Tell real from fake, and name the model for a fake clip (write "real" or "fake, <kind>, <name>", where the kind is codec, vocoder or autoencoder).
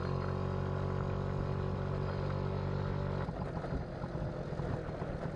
real